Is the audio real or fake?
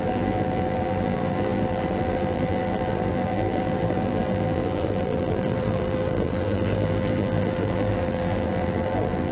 fake